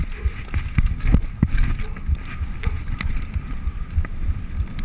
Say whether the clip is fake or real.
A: real